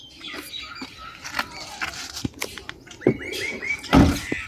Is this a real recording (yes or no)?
no